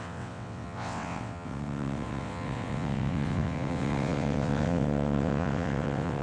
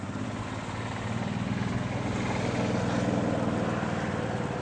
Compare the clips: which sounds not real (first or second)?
first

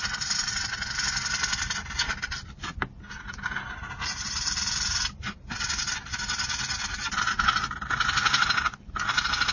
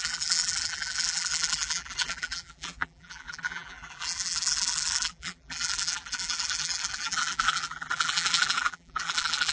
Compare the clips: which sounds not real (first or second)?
second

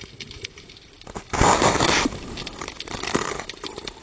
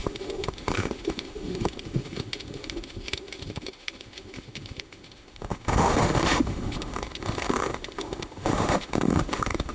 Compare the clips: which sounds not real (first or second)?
second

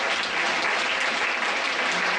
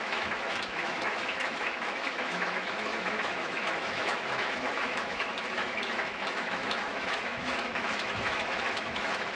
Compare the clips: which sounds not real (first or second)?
second